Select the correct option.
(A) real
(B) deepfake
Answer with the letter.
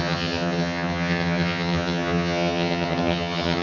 B